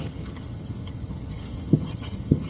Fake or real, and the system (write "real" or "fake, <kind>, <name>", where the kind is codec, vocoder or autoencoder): fake, vocoder, HiFi-GAN